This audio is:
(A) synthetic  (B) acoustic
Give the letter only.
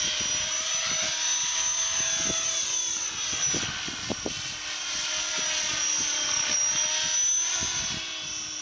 B